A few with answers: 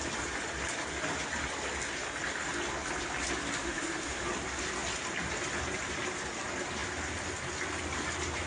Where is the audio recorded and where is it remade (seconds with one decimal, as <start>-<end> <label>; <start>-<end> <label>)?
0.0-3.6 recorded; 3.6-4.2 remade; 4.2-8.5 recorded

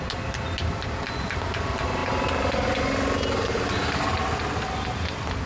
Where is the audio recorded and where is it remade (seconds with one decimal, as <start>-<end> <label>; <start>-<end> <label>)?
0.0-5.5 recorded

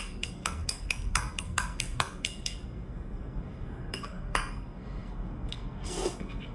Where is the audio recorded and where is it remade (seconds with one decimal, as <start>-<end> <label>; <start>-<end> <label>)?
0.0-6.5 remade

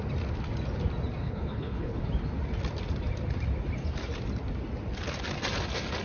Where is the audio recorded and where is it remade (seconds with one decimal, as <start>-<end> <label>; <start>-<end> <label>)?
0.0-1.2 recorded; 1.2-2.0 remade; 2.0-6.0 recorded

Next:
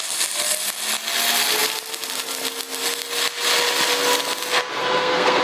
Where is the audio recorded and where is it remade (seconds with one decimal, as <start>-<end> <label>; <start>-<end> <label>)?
0.0-4.8 recorded; 4.8-5.4 remade